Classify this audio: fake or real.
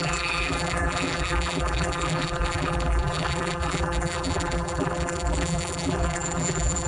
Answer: fake